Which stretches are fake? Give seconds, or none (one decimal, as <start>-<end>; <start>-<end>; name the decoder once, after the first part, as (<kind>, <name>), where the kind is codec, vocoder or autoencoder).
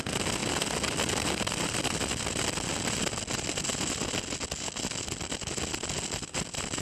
0.4-2.3 (vocoder, BigVGAN v2)